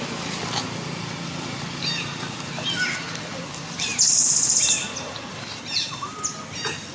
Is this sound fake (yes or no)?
no